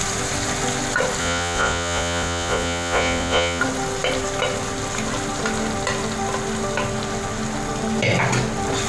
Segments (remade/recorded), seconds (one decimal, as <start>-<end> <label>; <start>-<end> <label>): 0.0-1.2 recorded; 1.2-3.6 remade; 3.6-8.9 recorded